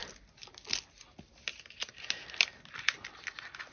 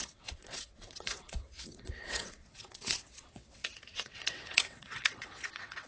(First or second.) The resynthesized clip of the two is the second